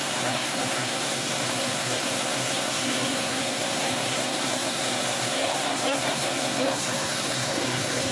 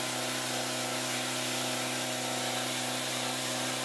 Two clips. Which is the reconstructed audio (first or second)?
first